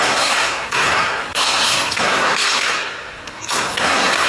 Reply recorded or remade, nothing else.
remade